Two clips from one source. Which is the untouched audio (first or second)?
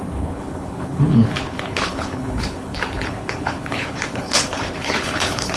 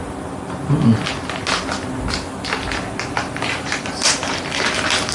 second